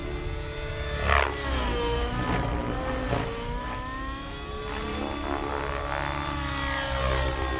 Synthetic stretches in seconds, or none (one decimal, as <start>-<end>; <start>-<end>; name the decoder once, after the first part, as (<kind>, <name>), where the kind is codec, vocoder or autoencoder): none